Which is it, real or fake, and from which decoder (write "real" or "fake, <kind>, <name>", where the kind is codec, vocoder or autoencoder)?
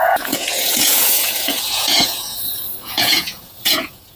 fake, vocoder, Vocos